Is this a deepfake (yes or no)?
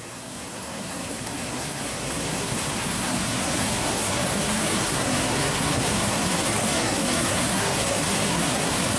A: yes